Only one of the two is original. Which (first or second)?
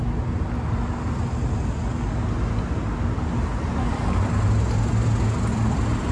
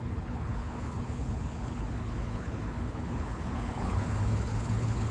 first